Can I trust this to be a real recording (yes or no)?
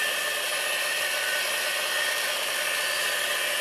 yes